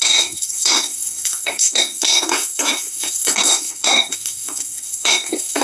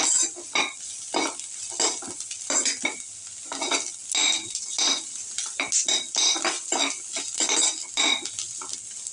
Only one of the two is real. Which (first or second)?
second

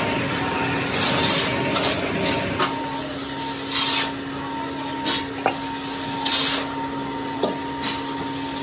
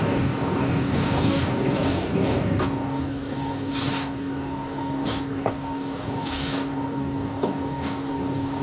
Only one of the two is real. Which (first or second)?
first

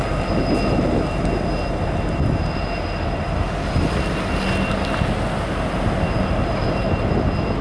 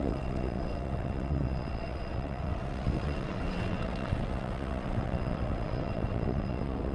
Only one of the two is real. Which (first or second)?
first